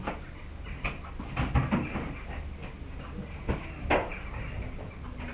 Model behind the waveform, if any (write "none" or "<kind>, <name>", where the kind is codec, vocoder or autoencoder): none